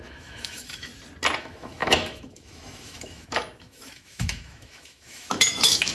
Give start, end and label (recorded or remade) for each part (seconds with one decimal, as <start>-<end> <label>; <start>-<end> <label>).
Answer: 0.0-0.9 remade; 0.9-1.4 recorded; 1.4-5.9 remade